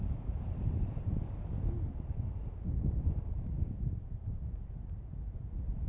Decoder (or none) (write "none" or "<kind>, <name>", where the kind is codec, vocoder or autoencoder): none